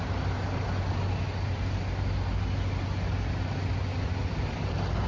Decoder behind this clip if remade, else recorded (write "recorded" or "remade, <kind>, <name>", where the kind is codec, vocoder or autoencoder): recorded